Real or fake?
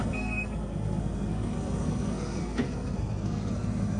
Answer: fake